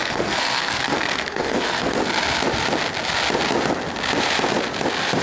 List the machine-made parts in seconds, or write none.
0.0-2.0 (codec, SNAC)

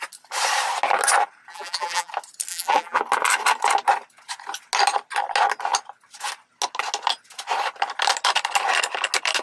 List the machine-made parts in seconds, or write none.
1.5-2.1 (vocoder, BigVGAN v2); 2.5-3.0

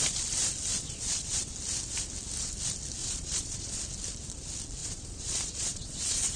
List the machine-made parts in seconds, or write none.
0.7-1.5 (vocoder, Vocos); 3.0-3.8; 4.8-6.4

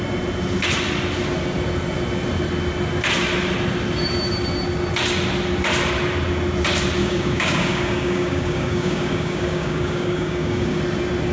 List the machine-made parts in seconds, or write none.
7.0-10.8 (codec, DAC)

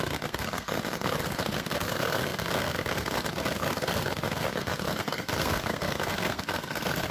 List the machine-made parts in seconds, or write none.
0.0-7.1 (codec, SNAC)

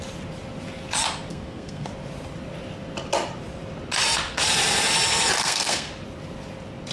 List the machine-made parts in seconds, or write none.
1.3-1.9 (codec, SNAC); 5.4-5.9

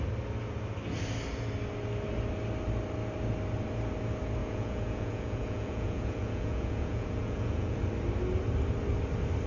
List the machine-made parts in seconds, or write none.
4.4-7.8 (vocoder, Vocos)